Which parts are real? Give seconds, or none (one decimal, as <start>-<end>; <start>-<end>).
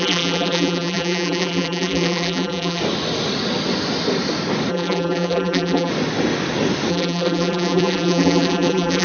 2.8-4.7; 5.9-6.9